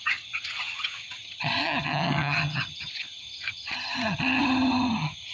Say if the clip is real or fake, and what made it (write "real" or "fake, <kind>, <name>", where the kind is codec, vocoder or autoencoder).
fake, vocoder, HiFi-GAN